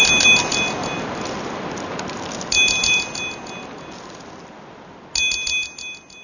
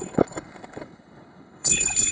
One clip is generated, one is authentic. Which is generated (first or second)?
second